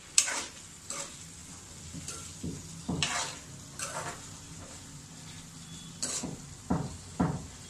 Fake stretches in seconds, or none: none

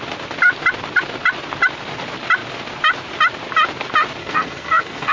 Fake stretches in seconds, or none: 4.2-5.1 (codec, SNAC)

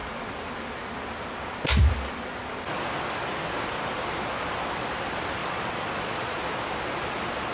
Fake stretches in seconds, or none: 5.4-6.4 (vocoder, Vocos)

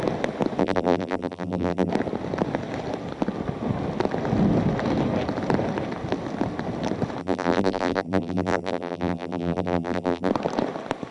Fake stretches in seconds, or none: 0.6-1.9 (vocoder, BigVGAN v2); 7.2-10.3

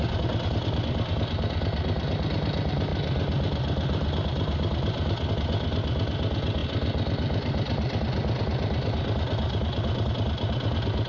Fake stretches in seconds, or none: none

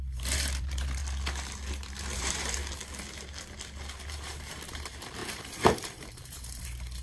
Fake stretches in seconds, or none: 0.0-1.0 (vocoder, BigVGAN v2); 1.7-2.6; 4.1-7.0

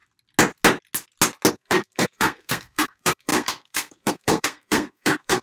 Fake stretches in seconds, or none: 1.5-5.4 (codec, SNAC)